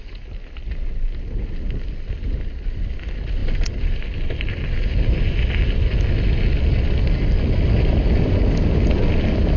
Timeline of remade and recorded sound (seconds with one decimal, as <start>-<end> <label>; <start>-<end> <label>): 0.0-9.6 recorded